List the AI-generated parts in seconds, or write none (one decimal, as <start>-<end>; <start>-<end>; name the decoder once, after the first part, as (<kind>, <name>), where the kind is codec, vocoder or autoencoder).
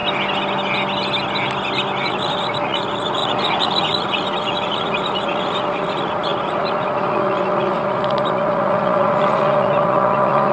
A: 2.0-10.5 (vocoder, Vocos)